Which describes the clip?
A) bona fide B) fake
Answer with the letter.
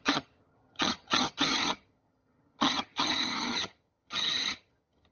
B